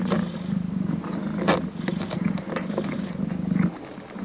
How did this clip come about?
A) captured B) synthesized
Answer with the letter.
A